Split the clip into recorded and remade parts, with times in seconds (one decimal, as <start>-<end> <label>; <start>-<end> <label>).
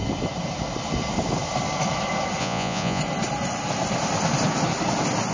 0.0-2.4 recorded; 2.4-3.0 remade; 3.0-5.3 recorded